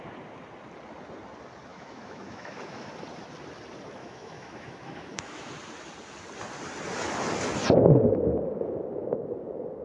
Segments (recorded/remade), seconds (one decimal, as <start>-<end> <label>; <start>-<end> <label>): 0.0-1.7 recorded; 1.7-2.9 remade; 2.9-4.0 recorded; 4.0-5.5 remade; 5.5-9.8 recorded